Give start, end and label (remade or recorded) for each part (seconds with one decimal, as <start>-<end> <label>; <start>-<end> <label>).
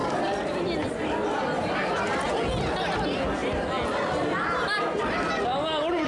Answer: 0.0-6.1 recorded